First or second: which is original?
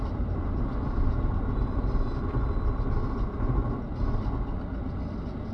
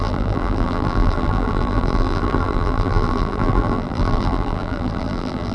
first